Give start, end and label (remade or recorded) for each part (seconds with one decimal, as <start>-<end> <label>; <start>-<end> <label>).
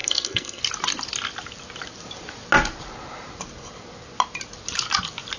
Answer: 0.0-0.6 remade; 0.6-5.4 recorded